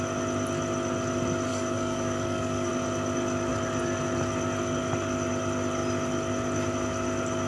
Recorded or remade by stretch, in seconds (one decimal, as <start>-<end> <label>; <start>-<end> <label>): 0.0-1.5 recorded; 1.5-2.7 remade; 2.7-7.5 recorded